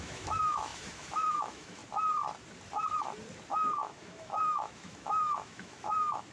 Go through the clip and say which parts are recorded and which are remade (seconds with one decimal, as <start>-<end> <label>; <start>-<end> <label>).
0.0-1.8 remade; 1.8-3.5 recorded; 3.5-6.3 remade